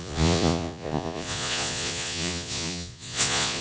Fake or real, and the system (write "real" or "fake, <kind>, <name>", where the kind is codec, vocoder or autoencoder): fake, vocoder, Vocos